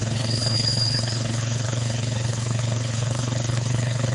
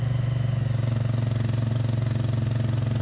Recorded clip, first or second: second